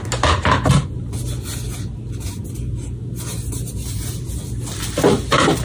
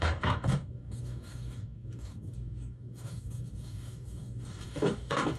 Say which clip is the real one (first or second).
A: first